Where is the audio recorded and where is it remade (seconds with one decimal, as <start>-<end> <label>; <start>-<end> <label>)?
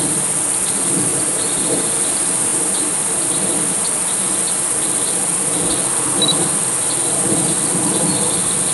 0.0-1.1 recorded; 1.1-1.9 remade; 1.9-2.5 recorded; 2.5-3.2 remade; 3.2-8.7 recorded